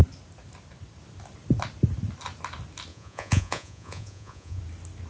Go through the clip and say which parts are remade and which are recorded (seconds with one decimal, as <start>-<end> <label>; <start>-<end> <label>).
0.0-2.9 recorded; 2.9-4.6 remade; 4.6-5.1 recorded

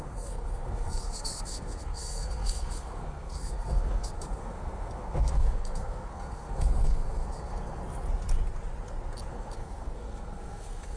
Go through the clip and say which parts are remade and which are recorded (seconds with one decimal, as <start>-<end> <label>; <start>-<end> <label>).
0.0-7.8 remade; 7.8-9.3 recorded; 9.3-11.0 remade

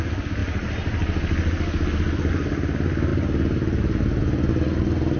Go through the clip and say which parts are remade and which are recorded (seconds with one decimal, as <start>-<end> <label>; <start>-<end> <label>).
0.0-5.2 recorded

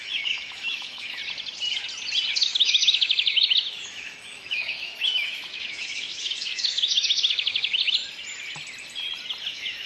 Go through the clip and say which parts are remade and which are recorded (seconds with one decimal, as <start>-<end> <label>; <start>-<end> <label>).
0.0-1.2 remade; 1.2-2.3 recorded; 2.3-8.0 remade; 8.0-9.4 recorded; 9.4-9.9 remade

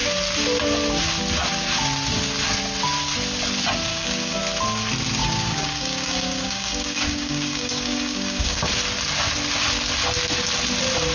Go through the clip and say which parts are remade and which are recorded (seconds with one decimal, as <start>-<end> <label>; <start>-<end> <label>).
0.0-3.9 recorded; 3.9-4.4 remade; 4.4-5.2 recorded; 5.2-8.6 remade; 8.6-11.1 recorded

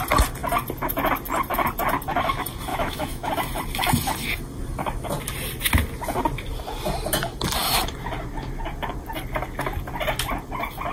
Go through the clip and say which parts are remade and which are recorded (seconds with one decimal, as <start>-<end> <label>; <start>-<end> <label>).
0.0-2.7 recorded; 2.7-3.3 remade; 3.3-10.9 recorded

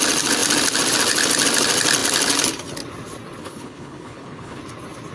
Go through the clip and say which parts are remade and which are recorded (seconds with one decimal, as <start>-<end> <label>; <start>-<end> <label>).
0.0-3.4 recorded; 3.4-4.6 remade; 4.6-5.1 recorded

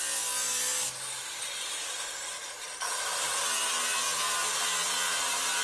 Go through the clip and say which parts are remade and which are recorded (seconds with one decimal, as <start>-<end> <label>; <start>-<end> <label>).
0.0-5.6 recorded